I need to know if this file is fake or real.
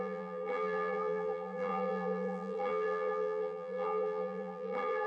fake